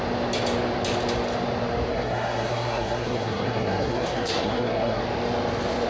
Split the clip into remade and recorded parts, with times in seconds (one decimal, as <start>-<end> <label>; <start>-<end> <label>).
0.0-1.9 recorded; 1.9-5.0 remade; 5.0-5.9 recorded